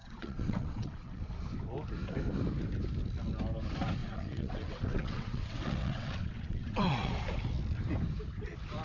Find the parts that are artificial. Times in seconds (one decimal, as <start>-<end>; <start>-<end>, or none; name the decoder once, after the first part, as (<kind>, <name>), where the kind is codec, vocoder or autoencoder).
0.0-1.2 (vocoder, WaveNeXt); 4.0-7.1